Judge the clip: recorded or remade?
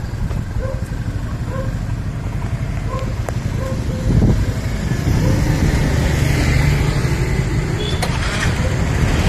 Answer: recorded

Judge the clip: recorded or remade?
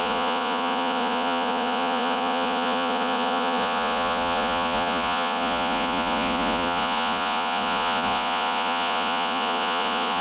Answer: remade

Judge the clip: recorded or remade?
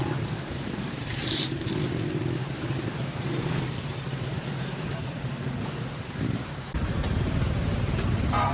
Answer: remade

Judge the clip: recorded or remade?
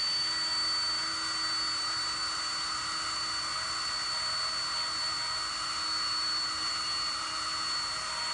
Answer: recorded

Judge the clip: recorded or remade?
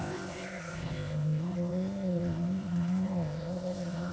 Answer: remade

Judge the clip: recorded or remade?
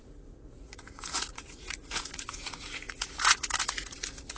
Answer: remade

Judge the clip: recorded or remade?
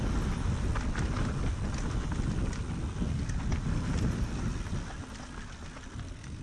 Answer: recorded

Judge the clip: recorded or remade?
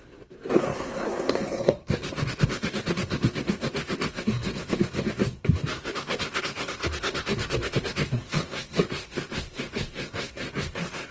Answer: remade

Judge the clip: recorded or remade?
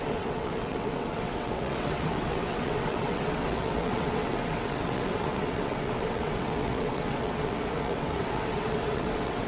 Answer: remade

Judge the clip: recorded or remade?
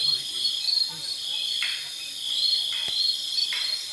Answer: recorded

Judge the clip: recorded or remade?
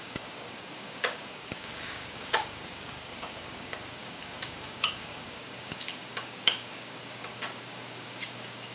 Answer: remade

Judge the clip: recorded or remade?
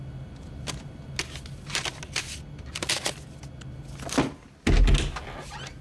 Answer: recorded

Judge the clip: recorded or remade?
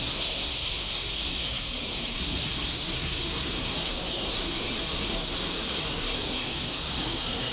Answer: remade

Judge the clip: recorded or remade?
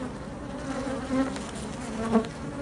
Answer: recorded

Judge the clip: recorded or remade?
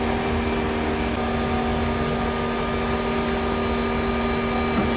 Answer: recorded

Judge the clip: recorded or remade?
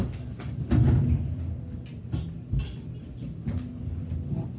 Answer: recorded